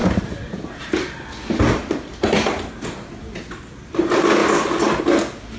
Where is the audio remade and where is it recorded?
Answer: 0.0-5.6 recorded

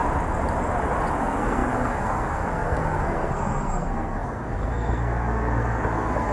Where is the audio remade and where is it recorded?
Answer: 0.0-1.2 recorded; 1.2-6.3 remade

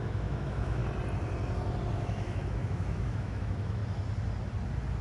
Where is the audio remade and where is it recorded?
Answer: 0.0-0.8 remade; 0.8-1.9 recorded; 1.9-3.8 remade; 3.8-5.0 recorded